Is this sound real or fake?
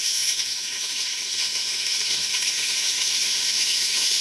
fake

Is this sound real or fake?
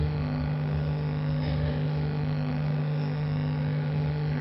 fake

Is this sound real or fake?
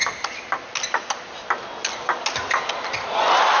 real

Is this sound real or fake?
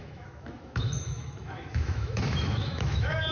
fake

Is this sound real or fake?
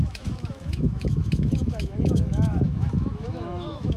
fake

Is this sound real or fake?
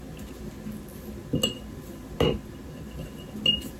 real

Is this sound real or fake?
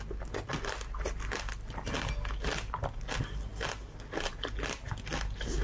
real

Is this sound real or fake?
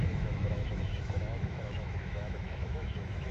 fake